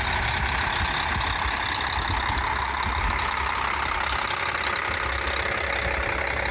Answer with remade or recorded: recorded